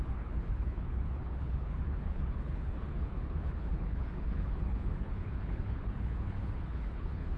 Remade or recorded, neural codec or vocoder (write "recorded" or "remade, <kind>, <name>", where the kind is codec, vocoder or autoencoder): remade, codec, HILCodec